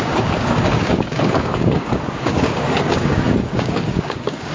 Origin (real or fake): fake